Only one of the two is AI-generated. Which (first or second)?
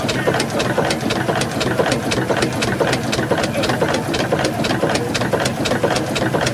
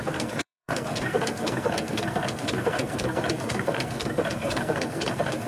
second